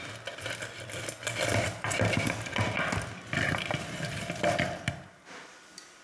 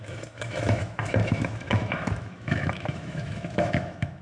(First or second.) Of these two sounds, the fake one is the second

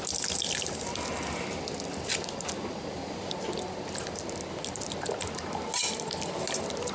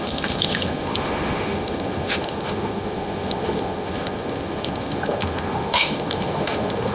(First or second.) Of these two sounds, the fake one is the second